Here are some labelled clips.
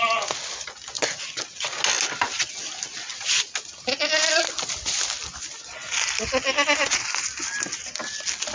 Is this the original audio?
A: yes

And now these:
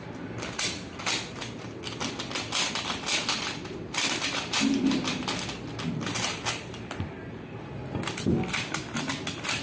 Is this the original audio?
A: yes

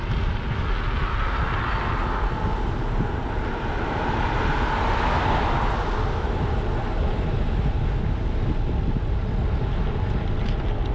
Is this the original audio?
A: yes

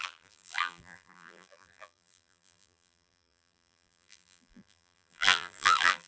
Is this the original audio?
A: no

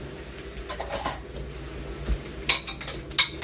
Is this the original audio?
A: yes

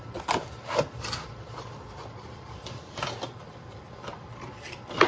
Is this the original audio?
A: no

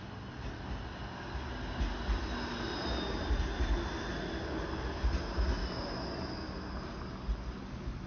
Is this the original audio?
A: yes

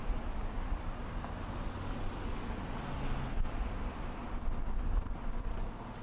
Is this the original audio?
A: yes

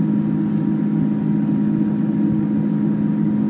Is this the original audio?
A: yes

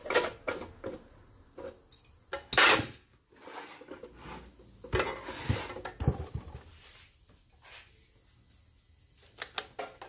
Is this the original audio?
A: yes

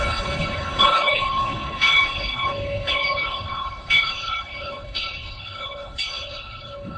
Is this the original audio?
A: no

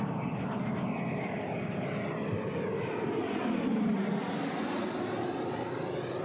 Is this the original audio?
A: yes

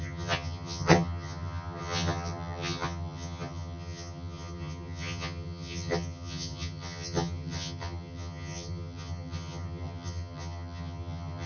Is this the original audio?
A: no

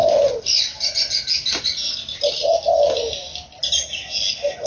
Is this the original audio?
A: yes